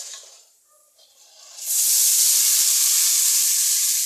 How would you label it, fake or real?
fake